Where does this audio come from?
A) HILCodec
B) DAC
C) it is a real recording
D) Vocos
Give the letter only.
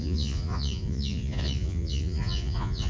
D